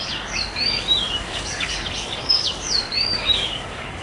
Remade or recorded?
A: remade